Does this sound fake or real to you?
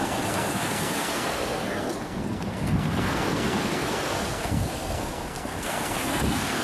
fake